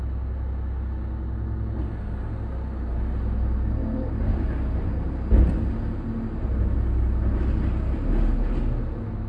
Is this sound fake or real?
real